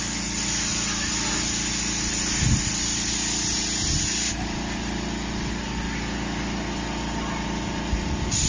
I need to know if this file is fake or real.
real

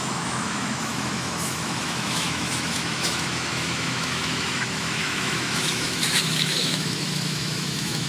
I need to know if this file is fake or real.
fake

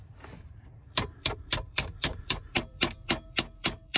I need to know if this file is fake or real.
fake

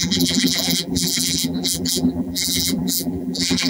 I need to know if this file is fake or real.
fake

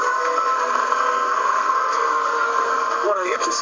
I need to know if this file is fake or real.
fake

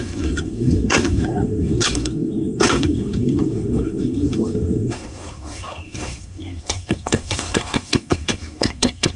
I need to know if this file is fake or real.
fake